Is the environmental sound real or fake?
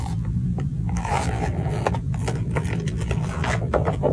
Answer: fake